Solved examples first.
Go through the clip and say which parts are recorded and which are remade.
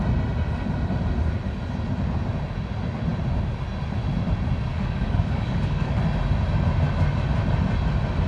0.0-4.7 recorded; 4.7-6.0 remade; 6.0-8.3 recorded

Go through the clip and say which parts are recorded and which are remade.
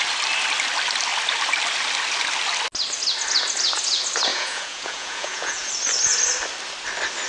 0.0-4.3 recorded; 4.3-5.7 remade; 5.7-7.3 recorded